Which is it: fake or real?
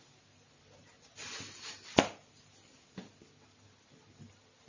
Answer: real